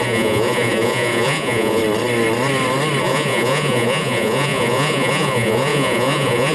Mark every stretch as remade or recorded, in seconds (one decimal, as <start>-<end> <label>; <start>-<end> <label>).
0.0-1.8 remade; 1.8-3.0 recorded; 3.0-6.5 remade